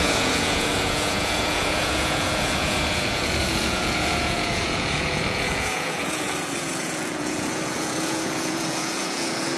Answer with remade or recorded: remade